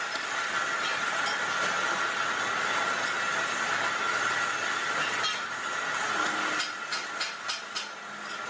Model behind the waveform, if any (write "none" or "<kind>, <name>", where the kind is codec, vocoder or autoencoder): none